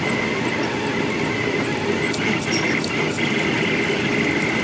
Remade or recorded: recorded